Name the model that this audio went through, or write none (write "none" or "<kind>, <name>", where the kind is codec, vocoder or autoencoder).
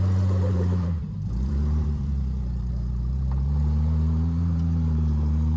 vocoder, BigVGAN v2